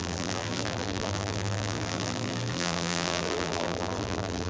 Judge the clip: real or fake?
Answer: fake